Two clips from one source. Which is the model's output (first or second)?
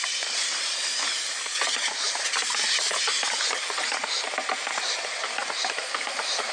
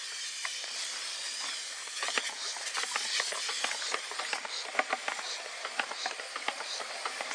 first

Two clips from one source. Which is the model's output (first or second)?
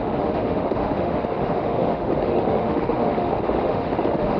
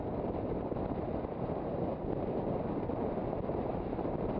first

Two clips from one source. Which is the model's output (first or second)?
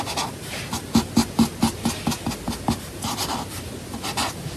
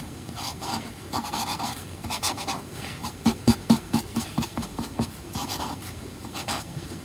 second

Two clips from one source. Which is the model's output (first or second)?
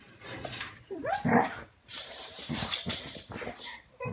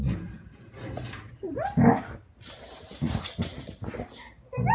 first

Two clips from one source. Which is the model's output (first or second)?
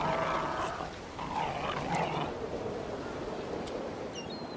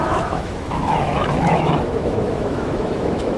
second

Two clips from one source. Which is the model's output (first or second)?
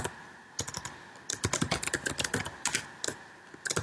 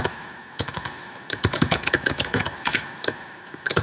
second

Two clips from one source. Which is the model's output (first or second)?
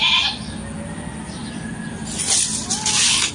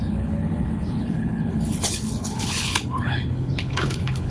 second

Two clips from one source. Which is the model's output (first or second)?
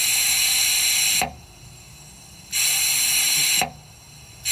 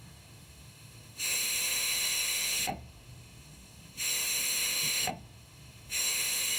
second